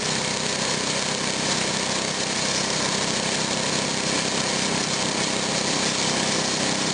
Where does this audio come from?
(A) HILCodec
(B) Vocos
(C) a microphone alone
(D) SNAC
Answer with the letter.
C